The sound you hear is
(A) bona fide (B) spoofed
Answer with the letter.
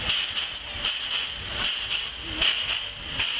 A